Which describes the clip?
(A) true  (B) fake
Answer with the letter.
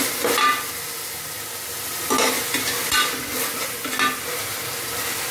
A